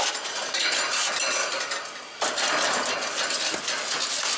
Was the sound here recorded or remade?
recorded